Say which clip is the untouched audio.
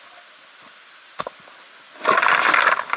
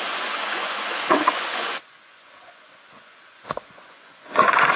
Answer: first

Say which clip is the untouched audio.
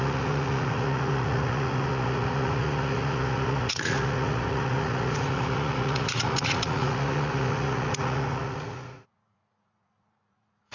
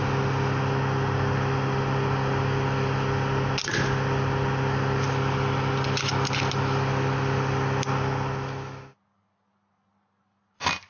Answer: second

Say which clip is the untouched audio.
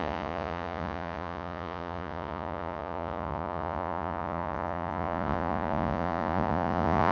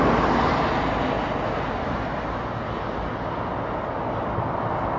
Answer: second